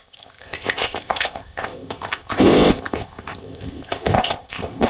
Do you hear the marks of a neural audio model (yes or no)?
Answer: yes